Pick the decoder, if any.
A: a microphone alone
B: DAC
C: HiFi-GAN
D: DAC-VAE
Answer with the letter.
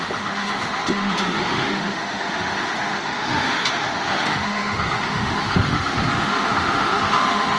D